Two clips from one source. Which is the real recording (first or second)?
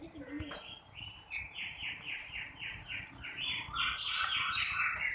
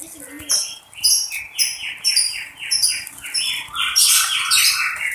second